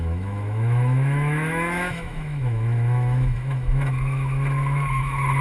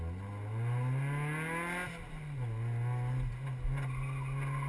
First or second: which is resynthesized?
first